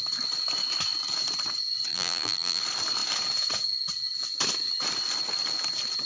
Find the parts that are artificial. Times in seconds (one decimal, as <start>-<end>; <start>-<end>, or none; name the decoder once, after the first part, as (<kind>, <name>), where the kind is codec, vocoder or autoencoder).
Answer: 1.9-2.6 (vocoder, BigVGAN v2)